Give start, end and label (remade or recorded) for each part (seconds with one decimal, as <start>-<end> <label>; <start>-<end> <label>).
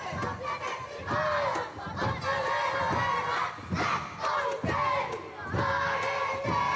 0.0-6.8 recorded